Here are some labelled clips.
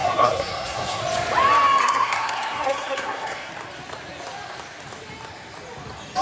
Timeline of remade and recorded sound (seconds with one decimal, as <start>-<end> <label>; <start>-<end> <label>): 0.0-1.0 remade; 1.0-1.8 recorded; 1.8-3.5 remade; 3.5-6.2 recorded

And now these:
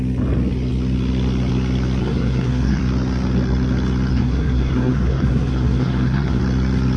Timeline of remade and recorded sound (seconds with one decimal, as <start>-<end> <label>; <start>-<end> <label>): 0.0-2.0 recorded; 2.0-2.8 remade; 2.8-4.1 recorded; 4.1-6.4 remade; 6.4-7.0 recorded

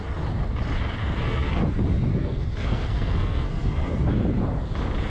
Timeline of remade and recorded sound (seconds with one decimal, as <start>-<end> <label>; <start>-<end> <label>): 0.0-1.0 recorded; 1.0-1.6 remade; 1.6-2.1 recorded; 2.1-4.0 remade; 4.0-5.1 recorded

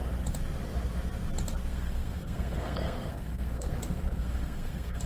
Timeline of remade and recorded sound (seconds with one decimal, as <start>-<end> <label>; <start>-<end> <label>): 0.0-1.7 recorded; 1.7-5.1 remade